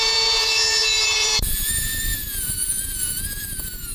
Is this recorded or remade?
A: remade